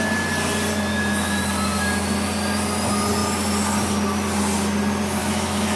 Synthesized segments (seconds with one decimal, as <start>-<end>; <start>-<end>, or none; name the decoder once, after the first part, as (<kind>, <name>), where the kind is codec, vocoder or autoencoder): 0.9-1.4 (autoencoder, DAC-VAE); 5.2-5.8